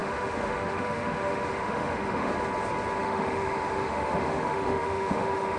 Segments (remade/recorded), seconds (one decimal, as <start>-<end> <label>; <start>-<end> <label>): 0.0-2.3 remade; 2.3-3.0 recorded; 3.0-5.6 remade